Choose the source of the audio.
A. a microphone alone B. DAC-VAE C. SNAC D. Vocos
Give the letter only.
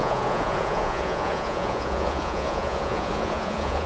D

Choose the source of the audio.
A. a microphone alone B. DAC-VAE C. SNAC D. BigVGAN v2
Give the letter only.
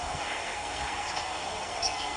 C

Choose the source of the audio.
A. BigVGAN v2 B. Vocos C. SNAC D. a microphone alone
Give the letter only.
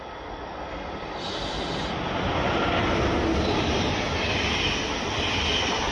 D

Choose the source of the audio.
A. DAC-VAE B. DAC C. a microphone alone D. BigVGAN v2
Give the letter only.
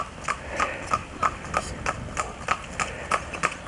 C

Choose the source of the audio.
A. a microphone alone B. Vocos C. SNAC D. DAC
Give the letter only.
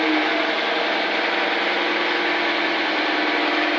A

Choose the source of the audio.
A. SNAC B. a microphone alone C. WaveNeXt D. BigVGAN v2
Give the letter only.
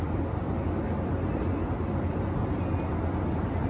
B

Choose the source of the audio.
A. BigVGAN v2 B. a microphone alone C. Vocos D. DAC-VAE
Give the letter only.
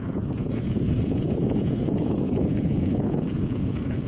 C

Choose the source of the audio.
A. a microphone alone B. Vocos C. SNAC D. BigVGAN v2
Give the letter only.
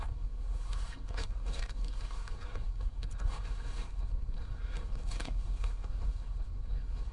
C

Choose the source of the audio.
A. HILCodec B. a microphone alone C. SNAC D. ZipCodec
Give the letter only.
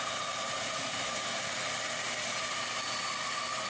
B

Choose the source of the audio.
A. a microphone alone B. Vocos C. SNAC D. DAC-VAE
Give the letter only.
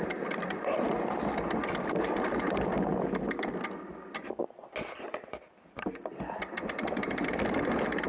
A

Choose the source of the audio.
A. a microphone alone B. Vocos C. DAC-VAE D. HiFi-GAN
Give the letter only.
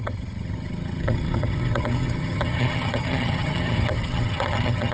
D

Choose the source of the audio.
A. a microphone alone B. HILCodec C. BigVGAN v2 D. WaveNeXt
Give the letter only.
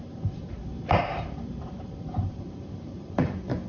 C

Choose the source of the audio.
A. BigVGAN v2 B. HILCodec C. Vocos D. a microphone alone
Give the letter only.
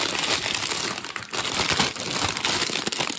A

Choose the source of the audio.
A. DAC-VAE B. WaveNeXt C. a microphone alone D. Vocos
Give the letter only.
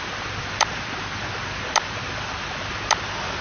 C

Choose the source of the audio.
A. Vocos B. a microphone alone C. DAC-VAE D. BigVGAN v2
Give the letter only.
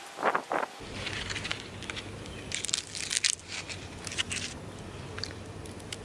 B